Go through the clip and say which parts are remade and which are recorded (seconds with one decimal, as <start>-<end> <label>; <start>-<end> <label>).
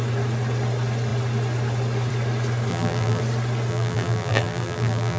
0.0-2.7 recorded; 2.7-3.2 remade; 3.2-3.7 recorded; 3.7-5.2 remade